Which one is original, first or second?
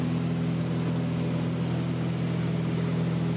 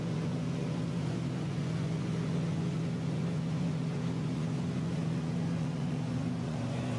first